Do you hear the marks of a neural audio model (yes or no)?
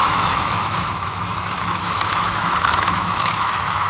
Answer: yes